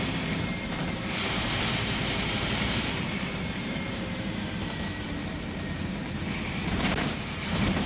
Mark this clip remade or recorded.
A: remade